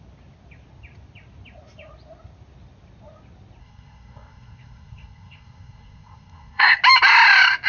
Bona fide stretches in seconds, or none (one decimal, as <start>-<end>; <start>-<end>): 0.0-3.6; 6.8-7.7